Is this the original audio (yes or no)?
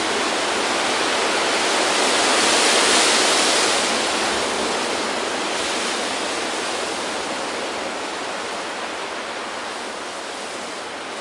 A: yes